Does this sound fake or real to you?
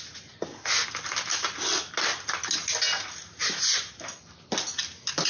real